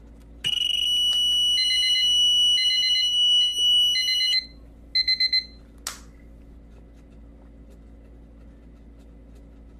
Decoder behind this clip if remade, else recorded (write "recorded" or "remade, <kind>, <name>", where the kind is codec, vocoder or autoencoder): recorded